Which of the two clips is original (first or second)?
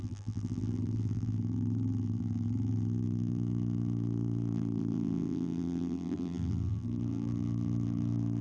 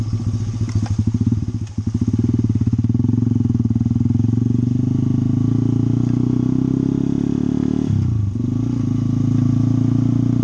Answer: second